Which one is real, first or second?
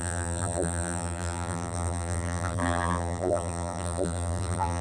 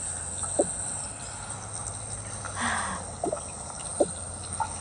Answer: second